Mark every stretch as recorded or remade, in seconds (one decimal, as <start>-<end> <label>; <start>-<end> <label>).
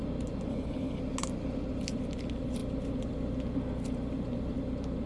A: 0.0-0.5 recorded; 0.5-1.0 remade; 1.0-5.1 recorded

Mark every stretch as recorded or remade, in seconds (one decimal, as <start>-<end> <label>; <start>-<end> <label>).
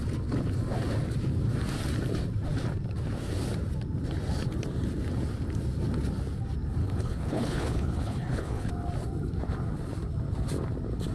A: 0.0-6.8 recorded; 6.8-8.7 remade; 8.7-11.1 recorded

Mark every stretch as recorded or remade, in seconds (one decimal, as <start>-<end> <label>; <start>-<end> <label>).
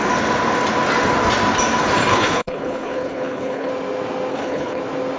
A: 0.0-2.1 recorded; 2.1-3.7 remade; 3.7-4.3 recorded; 4.3-4.8 remade; 4.8-5.2 recorded